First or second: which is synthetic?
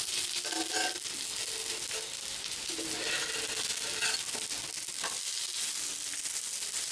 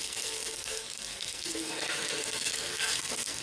second